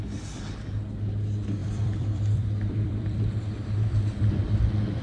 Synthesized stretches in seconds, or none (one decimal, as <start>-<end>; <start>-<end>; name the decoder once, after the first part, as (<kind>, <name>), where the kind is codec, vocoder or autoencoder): 1.6-4.6 (vocoder, BigVGAN v2)